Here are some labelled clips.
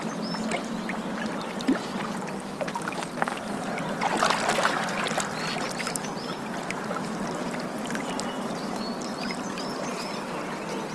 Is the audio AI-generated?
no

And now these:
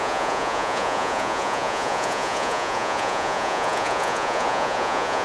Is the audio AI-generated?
yes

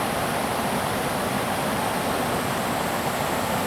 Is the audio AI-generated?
no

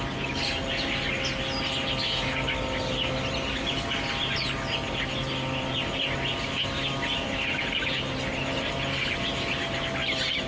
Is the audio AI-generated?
no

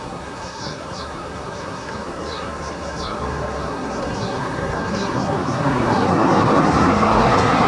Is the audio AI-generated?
yes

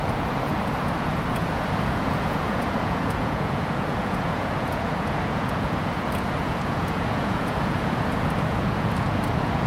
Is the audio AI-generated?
yes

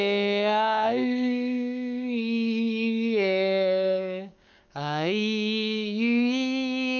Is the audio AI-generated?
yes